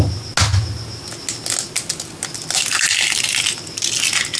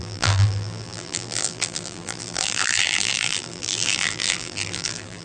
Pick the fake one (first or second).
second